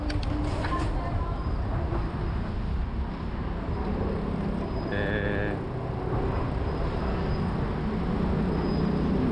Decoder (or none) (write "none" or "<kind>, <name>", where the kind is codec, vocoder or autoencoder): none